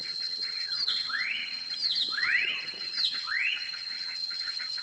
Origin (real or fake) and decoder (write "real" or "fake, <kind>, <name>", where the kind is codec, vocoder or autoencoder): fake, vocoder, HiFi-GAN